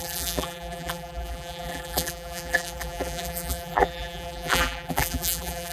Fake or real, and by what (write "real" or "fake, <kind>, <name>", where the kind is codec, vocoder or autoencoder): fake, vocoder, BigVGAN v2